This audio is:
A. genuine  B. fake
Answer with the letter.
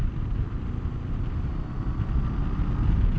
A